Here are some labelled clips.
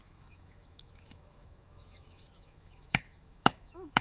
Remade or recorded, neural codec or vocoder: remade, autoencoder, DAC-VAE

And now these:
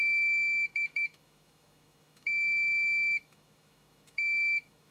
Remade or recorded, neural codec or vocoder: remade, autoencoder, DAC-VAE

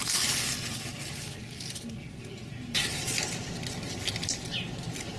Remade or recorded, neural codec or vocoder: recorded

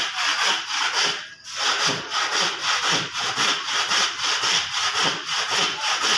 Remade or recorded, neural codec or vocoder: recorded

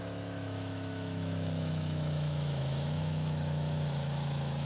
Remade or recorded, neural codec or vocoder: remade, autoencoder, DAC-VAE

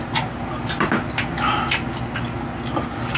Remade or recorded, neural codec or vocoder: recorded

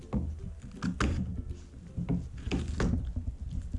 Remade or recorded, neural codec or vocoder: recorded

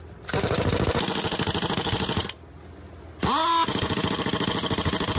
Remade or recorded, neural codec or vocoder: recorded